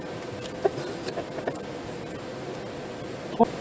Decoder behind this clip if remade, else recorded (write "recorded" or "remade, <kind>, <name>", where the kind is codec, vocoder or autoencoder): recorded